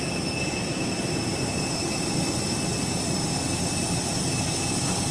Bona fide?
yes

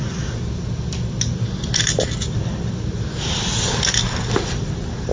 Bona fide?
yes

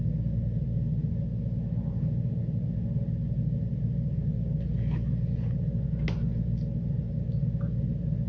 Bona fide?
yes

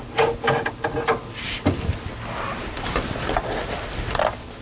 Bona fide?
yes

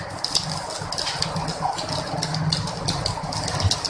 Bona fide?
yes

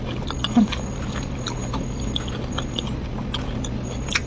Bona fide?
yes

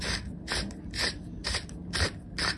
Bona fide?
yes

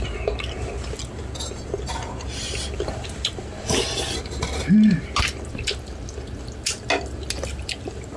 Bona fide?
yes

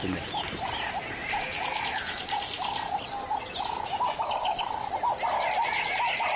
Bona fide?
no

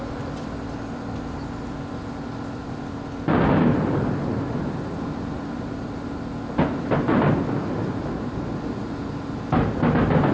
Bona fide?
yes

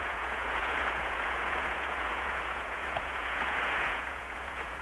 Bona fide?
no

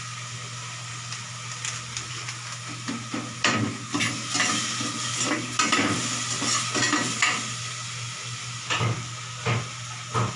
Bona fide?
yes